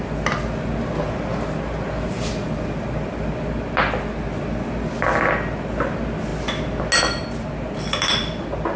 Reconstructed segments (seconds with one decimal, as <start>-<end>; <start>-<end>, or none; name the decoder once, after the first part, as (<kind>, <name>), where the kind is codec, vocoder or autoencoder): none